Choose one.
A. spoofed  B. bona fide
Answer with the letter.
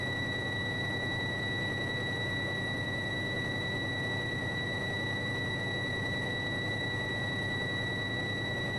A